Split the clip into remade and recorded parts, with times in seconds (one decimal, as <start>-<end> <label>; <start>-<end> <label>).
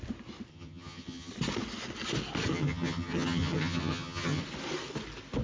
0.0-0.5 recorded; 0.5-1.3 remade; 1.3-2.5 recorded; 2.5-4.4 remade; 4.4-5.4 recorded